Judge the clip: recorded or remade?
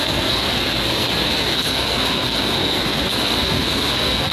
remade